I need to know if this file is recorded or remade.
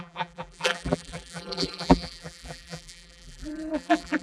remade